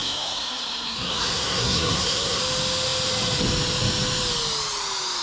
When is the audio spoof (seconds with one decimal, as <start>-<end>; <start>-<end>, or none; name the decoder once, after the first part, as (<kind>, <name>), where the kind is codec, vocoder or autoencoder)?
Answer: 0.0-2.4 (codec, SNAC)